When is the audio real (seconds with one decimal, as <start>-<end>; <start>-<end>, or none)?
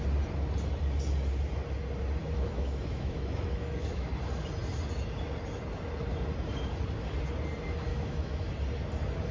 0.0-2.2; 4.1-7.9; 8.5-9.3